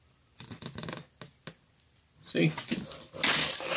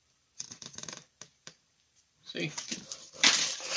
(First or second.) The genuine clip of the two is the first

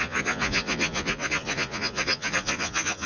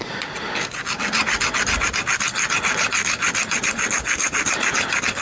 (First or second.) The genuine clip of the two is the second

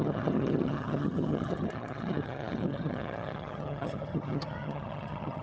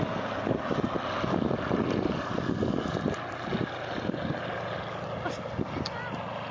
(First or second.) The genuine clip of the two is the second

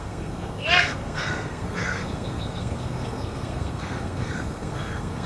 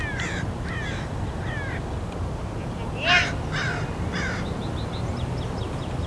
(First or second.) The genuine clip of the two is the second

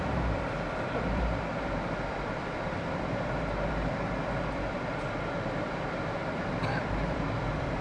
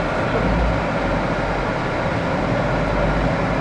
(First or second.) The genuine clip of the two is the second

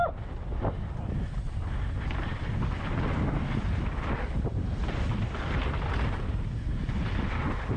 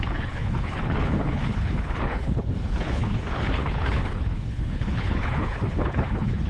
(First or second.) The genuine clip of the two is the first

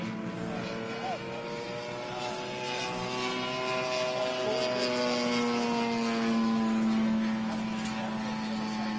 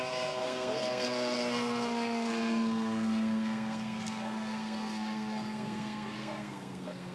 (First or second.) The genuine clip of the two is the first